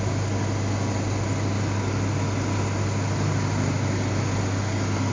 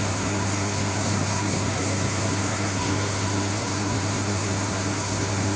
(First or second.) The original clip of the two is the first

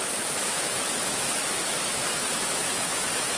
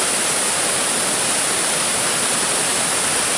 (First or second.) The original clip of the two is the second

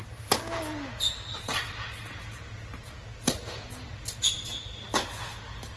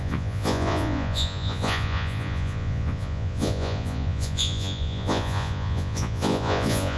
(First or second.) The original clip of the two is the first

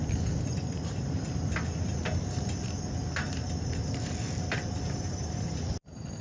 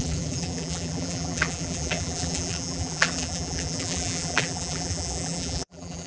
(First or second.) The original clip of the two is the first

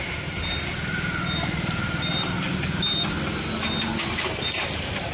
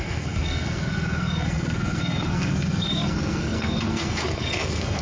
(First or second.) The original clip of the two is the first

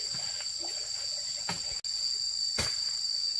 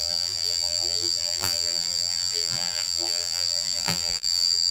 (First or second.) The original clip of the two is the first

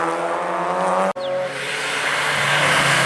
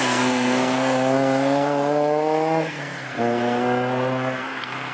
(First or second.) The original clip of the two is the first